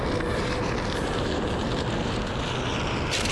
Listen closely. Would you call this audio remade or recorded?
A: remade